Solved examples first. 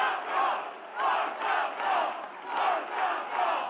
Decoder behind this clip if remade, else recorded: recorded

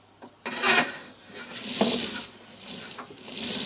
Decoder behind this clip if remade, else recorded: recorded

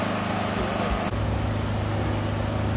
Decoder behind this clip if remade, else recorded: recorded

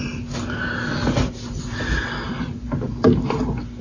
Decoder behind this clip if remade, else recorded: recorded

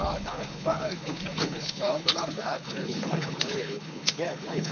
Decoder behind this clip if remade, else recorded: remade, codec, HILCodec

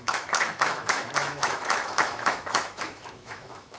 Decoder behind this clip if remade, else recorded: remade, autoencoder, DAC-VAE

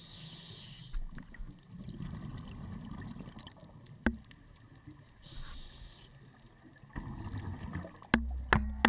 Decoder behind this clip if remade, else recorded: recorded